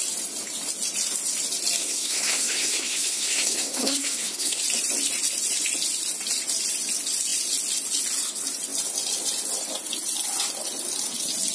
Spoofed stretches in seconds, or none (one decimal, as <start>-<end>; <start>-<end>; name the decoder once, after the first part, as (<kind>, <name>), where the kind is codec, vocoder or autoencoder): 1.8-4.6 (codec, SNAC)